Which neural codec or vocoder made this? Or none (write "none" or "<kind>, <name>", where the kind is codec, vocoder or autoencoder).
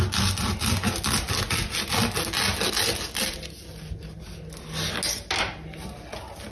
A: none